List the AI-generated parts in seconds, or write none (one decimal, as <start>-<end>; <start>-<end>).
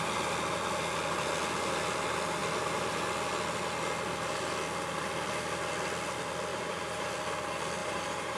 6.5-7.1; 7.8-8.4